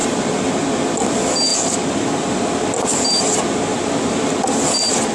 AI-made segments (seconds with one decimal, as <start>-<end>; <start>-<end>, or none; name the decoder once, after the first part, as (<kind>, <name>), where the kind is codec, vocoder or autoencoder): none